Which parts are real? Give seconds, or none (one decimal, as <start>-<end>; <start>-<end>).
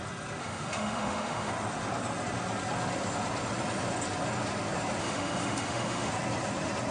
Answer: 0.0-0.4; 1.5-5.0; 6.1-6.9